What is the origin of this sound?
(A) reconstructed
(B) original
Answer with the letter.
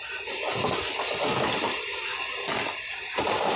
B